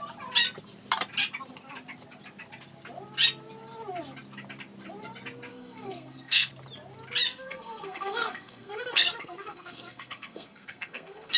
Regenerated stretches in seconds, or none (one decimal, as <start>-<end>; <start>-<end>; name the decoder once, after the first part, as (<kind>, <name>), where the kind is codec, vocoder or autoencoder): 5.5-6.5 (codec, SNAC); 7.3-11.4